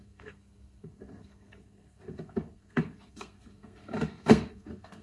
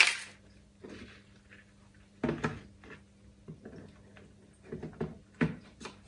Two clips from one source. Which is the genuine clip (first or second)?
second